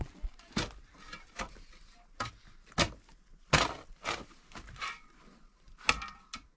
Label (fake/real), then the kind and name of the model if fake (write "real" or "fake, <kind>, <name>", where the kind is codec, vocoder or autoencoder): real